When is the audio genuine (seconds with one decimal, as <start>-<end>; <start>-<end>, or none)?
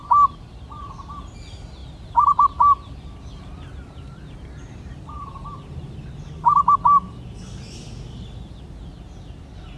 0.0-9.8